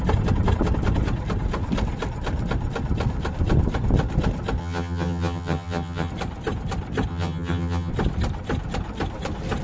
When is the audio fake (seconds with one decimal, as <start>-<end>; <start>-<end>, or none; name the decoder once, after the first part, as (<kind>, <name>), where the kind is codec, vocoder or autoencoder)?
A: 4.6-6.1 (vocoder, HiFi-GAN); 7.1-7.9